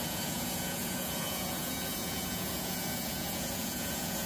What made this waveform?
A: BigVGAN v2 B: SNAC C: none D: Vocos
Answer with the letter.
D